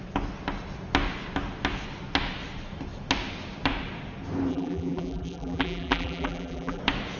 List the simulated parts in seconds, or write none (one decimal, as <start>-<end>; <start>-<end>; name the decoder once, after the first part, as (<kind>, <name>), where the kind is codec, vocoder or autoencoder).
4.5-6.8 (vocoder, BigVGAN v2)